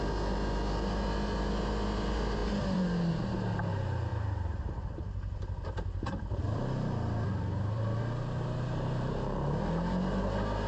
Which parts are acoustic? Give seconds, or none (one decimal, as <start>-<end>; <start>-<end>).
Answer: 0.0-2.4; 3.1-4.1; 8.0-10.7